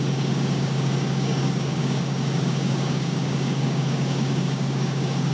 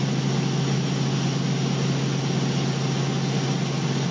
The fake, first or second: first